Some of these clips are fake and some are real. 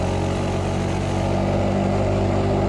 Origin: real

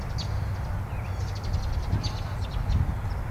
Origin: real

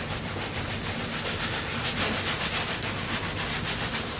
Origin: real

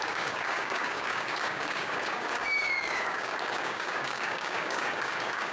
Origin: fake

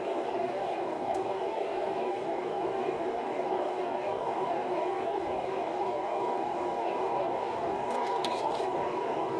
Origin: fake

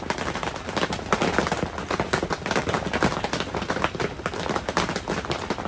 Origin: real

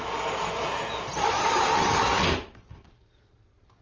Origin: real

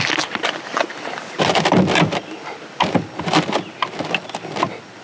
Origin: real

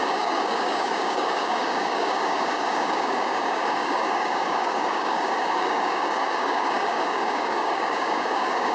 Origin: fake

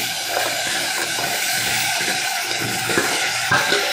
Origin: fake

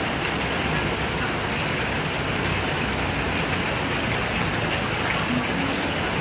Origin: real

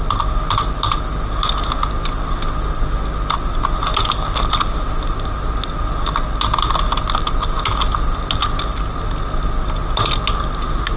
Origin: real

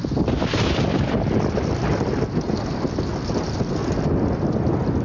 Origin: real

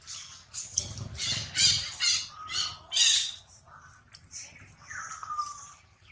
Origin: real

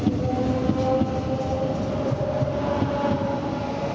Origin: real